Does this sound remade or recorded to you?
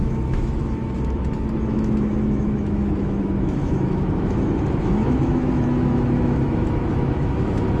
remade